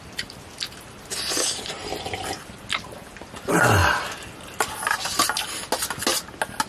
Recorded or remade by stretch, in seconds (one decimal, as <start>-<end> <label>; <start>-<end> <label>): 0.0-6.7 recorded